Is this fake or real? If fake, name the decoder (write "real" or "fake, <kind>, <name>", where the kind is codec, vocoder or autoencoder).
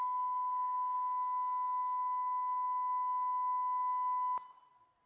real